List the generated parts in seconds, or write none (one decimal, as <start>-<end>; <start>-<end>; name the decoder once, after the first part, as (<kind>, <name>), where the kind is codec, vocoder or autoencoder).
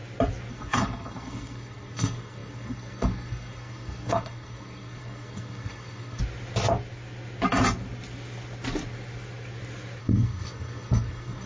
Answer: 0.5-6.2 (codec, SNAC); 10.0-11.5